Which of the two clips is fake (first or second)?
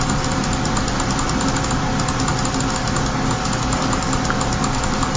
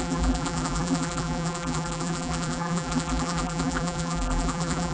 second